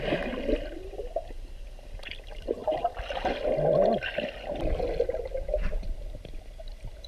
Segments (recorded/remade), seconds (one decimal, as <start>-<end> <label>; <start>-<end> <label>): 0.0-7.1 recorded